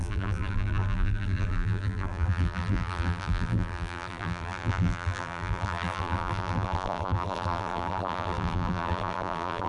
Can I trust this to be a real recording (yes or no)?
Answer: no